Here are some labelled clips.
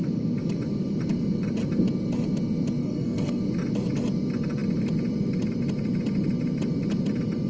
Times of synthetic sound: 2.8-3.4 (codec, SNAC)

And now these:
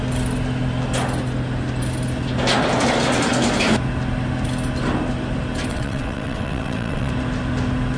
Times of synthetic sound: 5.7-7.1 (vocoder, WaveNeXt)

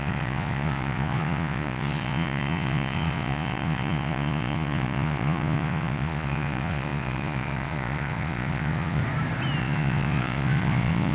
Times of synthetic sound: 0.0-9.0 (vocoder, Vocos); 9.6-11.1

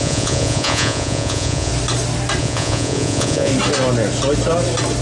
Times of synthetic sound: 0.0-1.7 (vocoder, Vocos); 2.4-3.5